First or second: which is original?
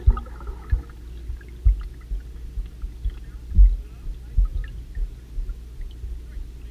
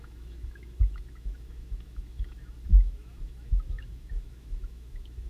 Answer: first